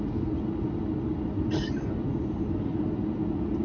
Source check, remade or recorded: recorded